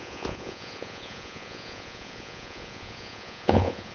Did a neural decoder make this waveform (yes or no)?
yes